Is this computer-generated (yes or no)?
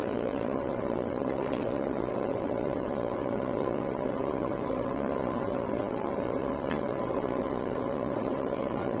yes